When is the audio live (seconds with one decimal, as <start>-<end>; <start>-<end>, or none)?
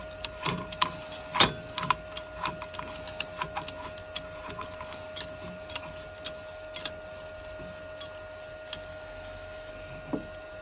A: 0.0-8.9; 9.7-10.6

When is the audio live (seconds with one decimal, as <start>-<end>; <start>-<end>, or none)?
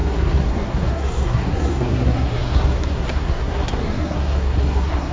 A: none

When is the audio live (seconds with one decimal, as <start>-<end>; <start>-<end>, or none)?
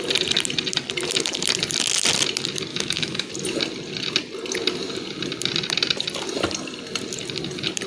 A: 0.0-2.7; 3.3-7.9